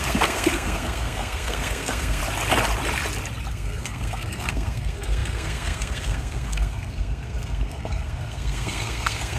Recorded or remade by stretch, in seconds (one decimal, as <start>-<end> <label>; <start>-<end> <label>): 0.0-2.2 remade; 2.2-3.5 recorded; 3.5-9.4 remade